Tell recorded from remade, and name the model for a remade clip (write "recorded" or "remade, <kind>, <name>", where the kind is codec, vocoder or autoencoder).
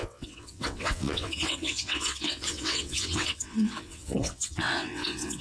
remade, vocoder, WaveNeXt